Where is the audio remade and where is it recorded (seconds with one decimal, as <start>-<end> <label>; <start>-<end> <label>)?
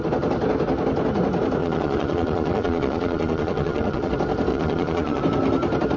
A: 0.0-1.6 recorded; 1.6-4.1 remade; 4.1-4.5 recorded; 4.5-5.2 remade; 5.2-6.0 recorded